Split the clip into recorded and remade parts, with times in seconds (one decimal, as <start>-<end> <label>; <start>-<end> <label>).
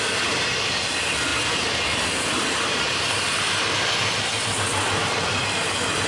0.0-6.1 remade